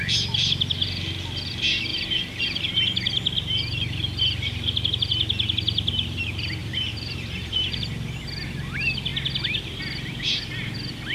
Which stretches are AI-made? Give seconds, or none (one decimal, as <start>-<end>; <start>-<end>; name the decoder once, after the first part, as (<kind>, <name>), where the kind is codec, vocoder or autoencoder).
1.9-2.7 (vocoder, BigVGAN v2); 6.6-7.8